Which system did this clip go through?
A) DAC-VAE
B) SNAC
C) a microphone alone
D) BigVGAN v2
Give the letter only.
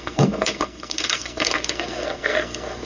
B